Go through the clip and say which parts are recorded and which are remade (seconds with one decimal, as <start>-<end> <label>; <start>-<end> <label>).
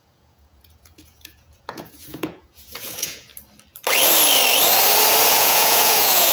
0.0-3.3 remade; 3.3-5.3 recorded; 5.3-6.3 remade